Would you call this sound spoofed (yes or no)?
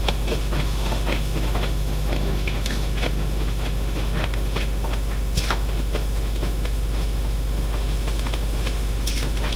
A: yes